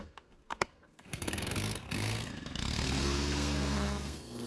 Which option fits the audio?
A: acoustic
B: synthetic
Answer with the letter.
B